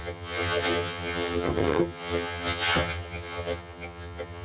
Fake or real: fake